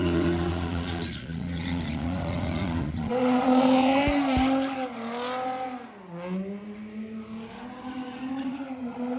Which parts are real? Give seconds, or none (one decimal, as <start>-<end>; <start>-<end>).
4.0-8.3